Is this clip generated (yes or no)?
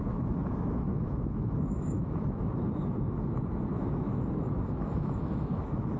yes